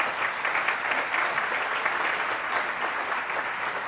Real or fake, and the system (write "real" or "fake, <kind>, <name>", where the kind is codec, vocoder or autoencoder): real